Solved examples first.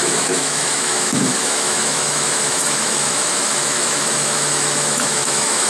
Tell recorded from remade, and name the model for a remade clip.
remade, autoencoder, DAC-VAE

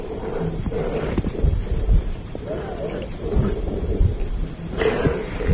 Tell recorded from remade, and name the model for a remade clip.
remade, vocoder, BigVGAN v2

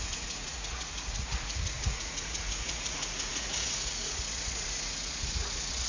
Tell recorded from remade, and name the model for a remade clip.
remade, vocoder, Vocos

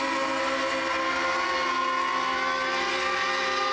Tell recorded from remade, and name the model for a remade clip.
recorded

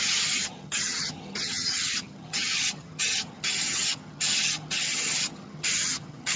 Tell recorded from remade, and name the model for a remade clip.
remade, vocoder, HiFi-GAN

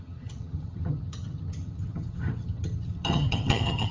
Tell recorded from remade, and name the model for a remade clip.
remade, vocoder, HiFi-GAN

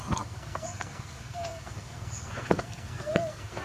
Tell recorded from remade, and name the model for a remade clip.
remade, codec, SNAC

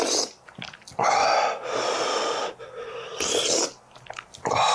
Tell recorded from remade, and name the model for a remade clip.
recorded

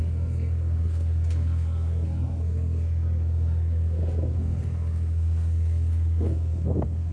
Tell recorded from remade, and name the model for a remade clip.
remade, codec, SNAC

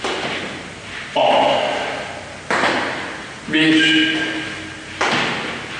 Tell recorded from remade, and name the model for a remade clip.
recorded